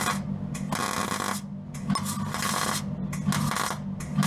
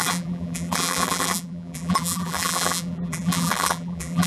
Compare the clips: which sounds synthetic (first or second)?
second